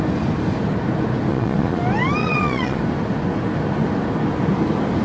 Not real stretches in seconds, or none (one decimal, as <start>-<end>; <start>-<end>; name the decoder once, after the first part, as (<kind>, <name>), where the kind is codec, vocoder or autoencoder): 1.3-1.8 (vocoder, Vocos); 2.2-2.8